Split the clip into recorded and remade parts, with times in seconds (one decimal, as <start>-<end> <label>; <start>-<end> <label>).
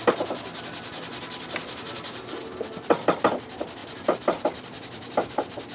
0.0-5.7 recorded